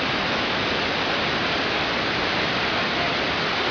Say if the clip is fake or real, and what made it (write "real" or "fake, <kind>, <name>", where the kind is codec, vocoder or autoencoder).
real